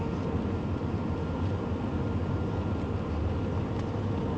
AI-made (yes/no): no